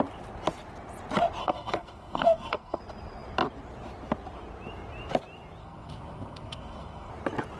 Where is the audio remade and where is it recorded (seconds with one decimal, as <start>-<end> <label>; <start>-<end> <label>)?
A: 0.0-1.4 recorded; 1.4-2.8 remade; 2.8-5.6 recorded; 5.6-7.1 remade; 7.1-7.6 recorded